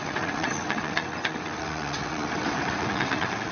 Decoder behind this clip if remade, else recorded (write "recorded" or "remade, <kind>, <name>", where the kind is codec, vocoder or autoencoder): remade, vocoder, WaveNeXt